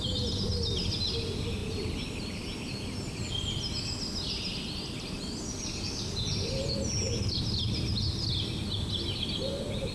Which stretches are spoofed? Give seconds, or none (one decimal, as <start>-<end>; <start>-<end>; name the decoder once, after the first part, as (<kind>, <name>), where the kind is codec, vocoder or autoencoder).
none